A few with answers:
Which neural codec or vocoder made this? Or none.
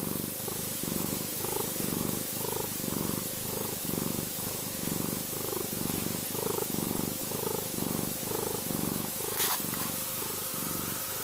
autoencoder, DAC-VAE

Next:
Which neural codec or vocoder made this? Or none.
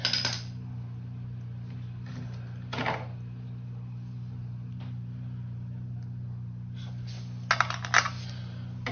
none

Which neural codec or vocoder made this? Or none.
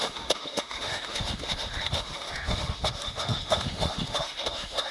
autoencoder, DAC-VAE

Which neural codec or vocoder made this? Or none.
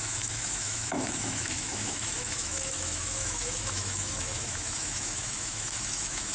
autoencoder, DAC-VAE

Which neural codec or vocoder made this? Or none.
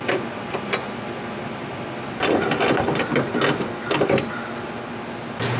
none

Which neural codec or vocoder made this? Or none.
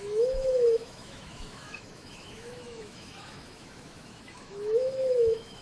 autoencoder, DAC-VAE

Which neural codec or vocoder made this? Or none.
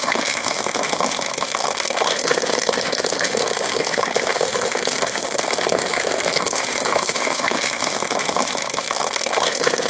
autoencoder, DAC-VAE